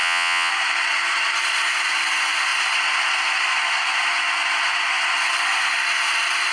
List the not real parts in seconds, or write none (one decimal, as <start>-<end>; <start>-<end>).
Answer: 0.0-0.5